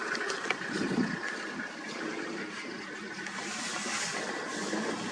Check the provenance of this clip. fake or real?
real